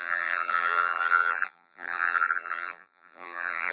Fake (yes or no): yes